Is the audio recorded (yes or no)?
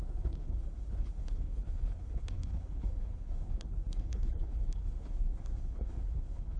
no